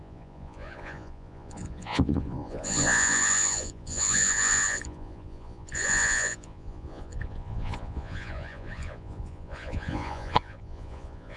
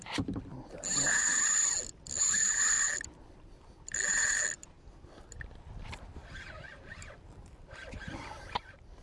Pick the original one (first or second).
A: second